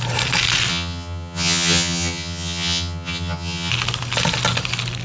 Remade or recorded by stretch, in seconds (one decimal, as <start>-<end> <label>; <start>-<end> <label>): 0.0-0.7 recorded; 0.7-3.7 remade; 3.7-5.0 recorded